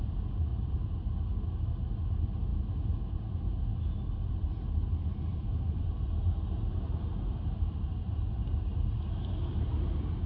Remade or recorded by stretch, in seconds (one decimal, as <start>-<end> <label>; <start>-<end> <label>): 0.0-3.7 recorded; 3.7-4.3 remade; 4.3-5.3 recorded; 5.3-6.3 remade; 6.3-10.3 recorded